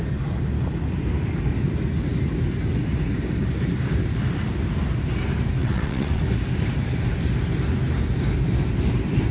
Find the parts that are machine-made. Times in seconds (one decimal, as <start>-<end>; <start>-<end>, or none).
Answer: 5.6-6.2